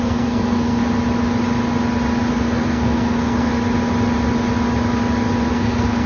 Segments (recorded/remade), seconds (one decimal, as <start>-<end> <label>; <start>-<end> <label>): 0.0-0.8 remade; 0.8-2.3 recorded; 2.3-3.5 remade; 3.5-5.5 recorded; 5.5-6.1 remade